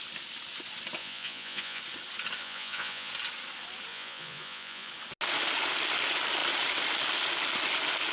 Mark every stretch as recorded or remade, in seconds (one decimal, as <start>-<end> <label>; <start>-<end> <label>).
0.0-1.0 recorded; 1.0-1.8 remade; 1.8-2.4 recorded; 2.4-3.1 remade; 3.1-3.9 recorded; 3.9-4.9 remade; 4.9-8.1 recorded